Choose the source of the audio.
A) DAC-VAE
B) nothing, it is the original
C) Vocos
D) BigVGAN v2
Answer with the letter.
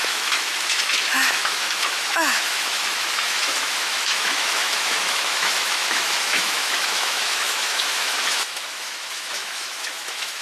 A